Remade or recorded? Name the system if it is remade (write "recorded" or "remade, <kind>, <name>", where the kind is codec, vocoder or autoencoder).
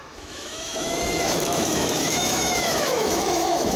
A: remade, autoencoder, DAC-VAE